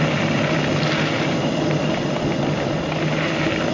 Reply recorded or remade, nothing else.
recorded